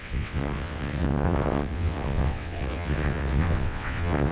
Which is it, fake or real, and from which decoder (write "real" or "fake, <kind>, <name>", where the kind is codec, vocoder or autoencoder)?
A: fake, vocoder, WaveNeXt